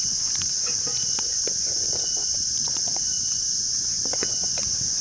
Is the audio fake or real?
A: fake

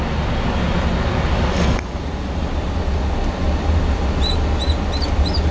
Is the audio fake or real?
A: real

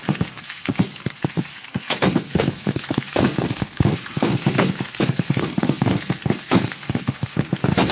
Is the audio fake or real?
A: fake